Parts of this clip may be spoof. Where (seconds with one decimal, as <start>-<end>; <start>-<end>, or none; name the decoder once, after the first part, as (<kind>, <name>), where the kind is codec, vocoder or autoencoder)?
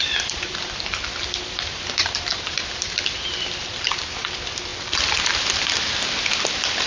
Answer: 2.3-4.2 (vocoder, BigVGAN v2); 4.7-5.9